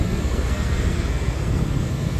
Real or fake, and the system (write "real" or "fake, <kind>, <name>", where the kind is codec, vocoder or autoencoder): fake, codec, SNAC